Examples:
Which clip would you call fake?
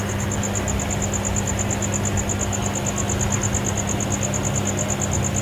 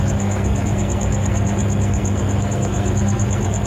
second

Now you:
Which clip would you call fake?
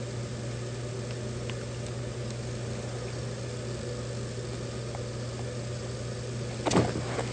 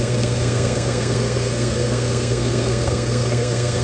second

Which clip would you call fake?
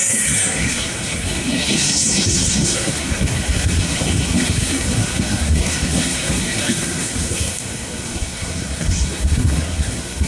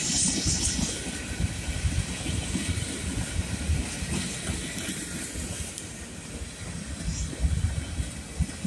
first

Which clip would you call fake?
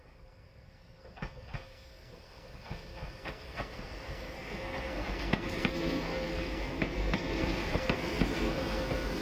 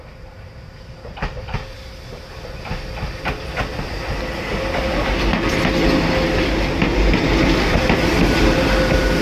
first